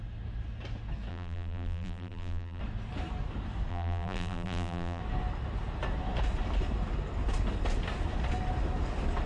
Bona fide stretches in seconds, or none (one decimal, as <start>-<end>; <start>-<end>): 0.0-1.1; 2.6-3.7; 5.0-9.3